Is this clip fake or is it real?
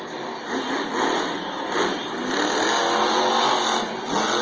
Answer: real